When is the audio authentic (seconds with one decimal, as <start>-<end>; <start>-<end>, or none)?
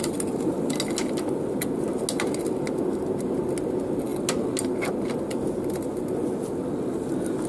0.0-7.5